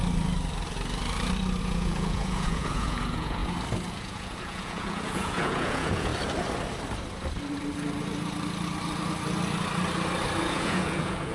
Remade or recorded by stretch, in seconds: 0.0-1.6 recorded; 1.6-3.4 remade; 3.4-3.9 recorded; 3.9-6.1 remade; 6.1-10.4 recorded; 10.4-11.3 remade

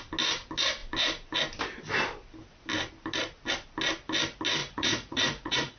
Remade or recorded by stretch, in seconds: 0.0-4.6 recorded; 4.6-5.8 remade

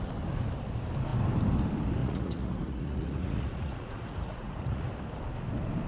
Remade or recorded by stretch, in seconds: 0.0-2.0 recorded; 2.0-4.9 remade; 4.9-5.9 recorded

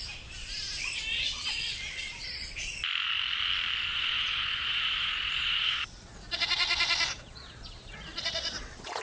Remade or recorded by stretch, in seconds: 0.0-1.1 recorded; 1.1-2.8 remade; 2.8-3.9 recorded; 3.9-9.0 remade

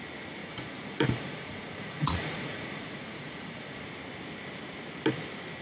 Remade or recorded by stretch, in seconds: 0.0-0.4 recorded; 0.4-3.8 remade; 3.8-5.6 recorded